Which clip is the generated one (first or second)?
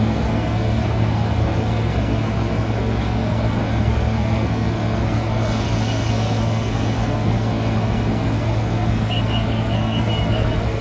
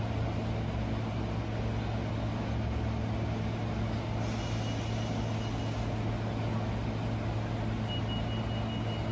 first